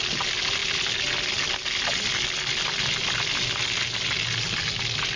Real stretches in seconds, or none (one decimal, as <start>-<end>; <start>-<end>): 0.0-5.2